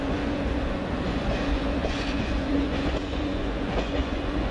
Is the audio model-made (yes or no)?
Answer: yes